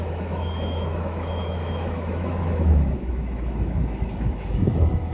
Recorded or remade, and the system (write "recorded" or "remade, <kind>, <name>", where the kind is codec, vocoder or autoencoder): remade, autoencoder, DAC-VAE